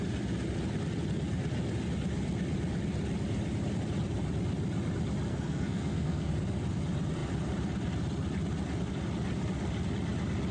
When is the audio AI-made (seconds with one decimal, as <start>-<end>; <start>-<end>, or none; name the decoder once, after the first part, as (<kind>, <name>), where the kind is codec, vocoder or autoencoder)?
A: 5.3-6.3 (codec, SNAC)